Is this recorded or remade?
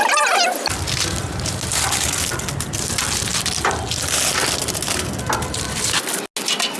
recorded